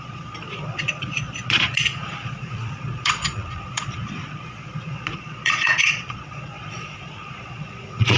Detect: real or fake fake